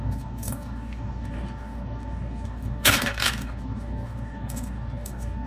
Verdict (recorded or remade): remade